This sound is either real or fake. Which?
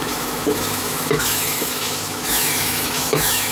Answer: fake